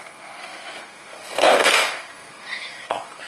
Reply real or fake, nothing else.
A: fake